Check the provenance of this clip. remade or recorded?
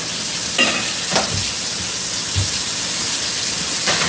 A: recorded